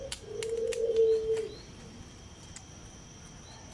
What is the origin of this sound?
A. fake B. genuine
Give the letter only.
B